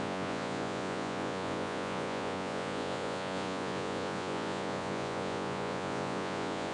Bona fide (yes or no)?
no